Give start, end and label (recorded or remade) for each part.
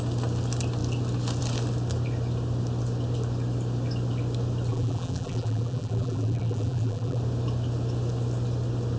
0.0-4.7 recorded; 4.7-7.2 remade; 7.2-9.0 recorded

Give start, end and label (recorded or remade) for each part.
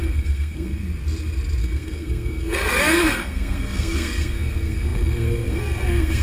0.0-0.8 remade; 0.8-1.6 recorded; 1.6-6.2 remade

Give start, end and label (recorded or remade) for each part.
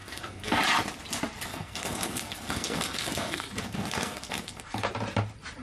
0.0-0.6 remade; 0.6-1.5 recorded; 1.5-4.9 remade; 4.9-5.6 recorded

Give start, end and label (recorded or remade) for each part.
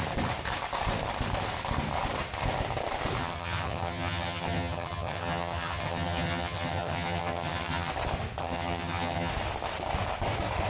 0.0-3.2 recorded; 3.2-7.9 remade; 7.9-8.4 recorded; 8.4-9.3 remade; 9.3-10.7 recorded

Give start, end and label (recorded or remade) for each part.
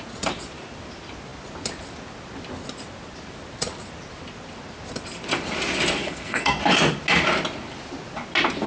0.0-6.0 recorded; 6.0-6.6 remade; 6.6-8.7 recorded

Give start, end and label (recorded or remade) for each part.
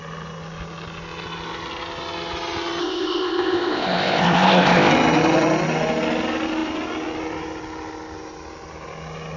0.0-2.8 recorded; 2.8-4.9 remade; 4.9-9.4 recorded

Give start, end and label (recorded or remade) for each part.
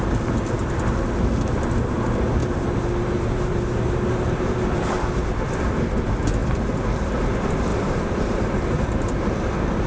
0.0-2.4 recorded; 2.4-5.3 remade; 5.3-7.7 recorded; 7.7-9.2 remade; 9.2-9.9 recorded